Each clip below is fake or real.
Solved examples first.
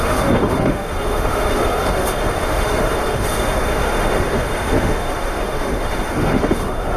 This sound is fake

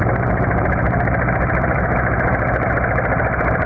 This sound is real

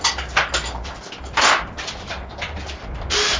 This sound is real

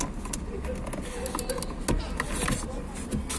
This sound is real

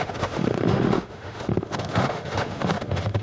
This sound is fake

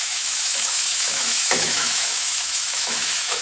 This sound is fake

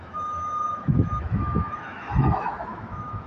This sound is fake